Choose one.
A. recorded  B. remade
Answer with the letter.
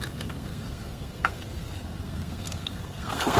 B